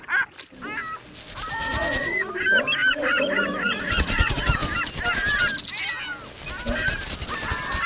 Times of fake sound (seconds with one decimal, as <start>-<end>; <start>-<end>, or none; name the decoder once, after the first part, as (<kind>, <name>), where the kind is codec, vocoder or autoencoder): 1.6-2.3 (vocoder, Vocos); 2.9-4.4